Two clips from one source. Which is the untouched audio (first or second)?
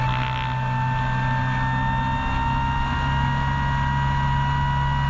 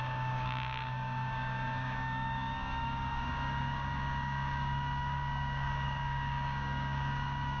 first